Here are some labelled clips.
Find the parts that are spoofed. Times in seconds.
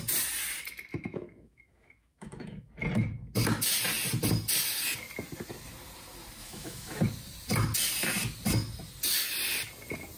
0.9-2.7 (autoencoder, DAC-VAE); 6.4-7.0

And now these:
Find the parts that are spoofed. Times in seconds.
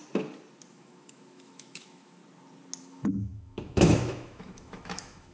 0.7-2.2 (autoencoder, DAC-VAE); 2.8-5.3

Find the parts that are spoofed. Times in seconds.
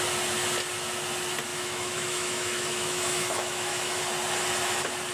1.5-4.0 (autoencoder, DAC-VAE)